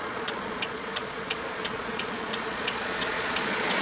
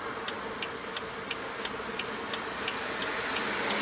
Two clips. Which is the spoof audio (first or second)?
first